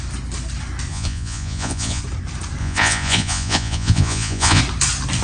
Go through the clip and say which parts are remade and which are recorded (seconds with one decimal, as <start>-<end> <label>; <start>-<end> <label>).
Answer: 0.0-0.9 recorded; 0.9-2.0 remade; 2.0-2.6 recorded; 2.6-4.6 remade; 4.6-5.2 recorded